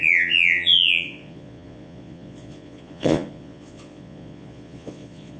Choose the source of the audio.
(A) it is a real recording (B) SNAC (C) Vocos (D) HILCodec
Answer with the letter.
C